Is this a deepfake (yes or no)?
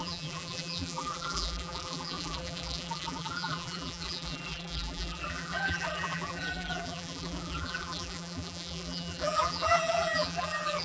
yes